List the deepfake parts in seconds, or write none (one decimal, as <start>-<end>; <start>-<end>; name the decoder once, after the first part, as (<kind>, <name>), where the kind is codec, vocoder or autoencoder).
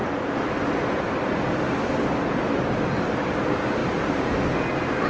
none